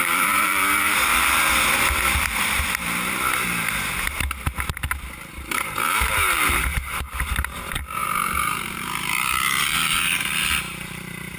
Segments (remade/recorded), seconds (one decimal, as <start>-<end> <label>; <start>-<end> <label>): 0.0-1.1 remade; 1.1-5.3 recorded; 5.3-11.4 remade